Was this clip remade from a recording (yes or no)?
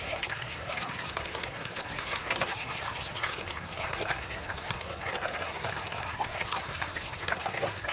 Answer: yes